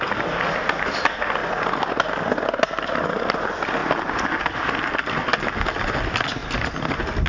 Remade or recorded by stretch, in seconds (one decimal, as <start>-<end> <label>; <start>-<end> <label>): 0.0-3.8 remade; 3.8-4.4 recorded; 4.4-6.4 remade; 6.4-7.3 recorded